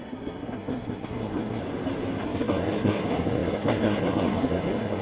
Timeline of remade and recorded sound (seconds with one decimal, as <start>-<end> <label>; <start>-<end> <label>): 0.0-1.6 remade; 1.6-2.2 recorded; 2.2-5.0 remade